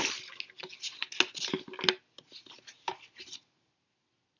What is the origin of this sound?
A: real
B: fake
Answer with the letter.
A